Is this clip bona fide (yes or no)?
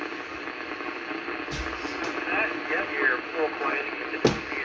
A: yes